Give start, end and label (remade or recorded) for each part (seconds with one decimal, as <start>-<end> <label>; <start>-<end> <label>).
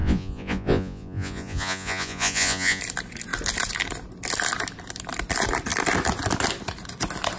0.0-2.8 remade; 2.8-7.4 recorded